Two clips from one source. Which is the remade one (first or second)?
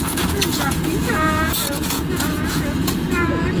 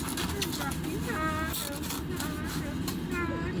first